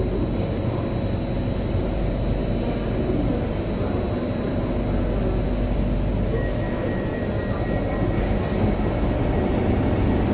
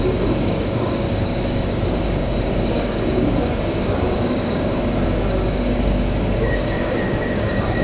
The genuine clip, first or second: first